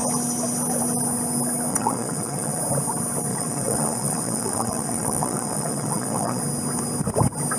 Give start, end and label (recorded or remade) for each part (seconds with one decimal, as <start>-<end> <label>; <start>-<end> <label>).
0.0-1.7 recorded; 1.7-2.6 remade; 2.6-3.3 recorded; 3.3-6.4 remade; 6.4-7.6 recorded